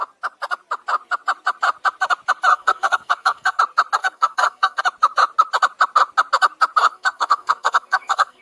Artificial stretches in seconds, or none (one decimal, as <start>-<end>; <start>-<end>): 2.5-3.6; 4.0-4.8; 6.9-8.4